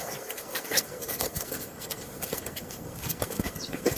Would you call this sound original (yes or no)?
no